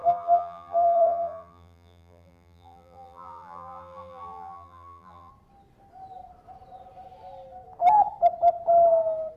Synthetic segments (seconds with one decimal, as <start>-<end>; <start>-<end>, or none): 0.0-5.3